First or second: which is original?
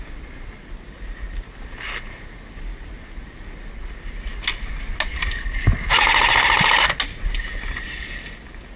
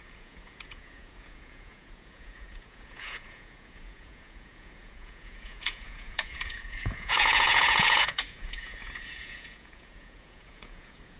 first